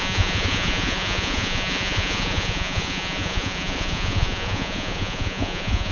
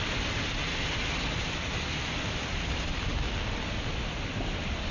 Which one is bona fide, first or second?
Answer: second